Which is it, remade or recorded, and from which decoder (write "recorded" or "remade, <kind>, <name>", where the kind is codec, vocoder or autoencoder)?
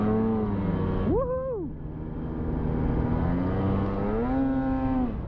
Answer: recorded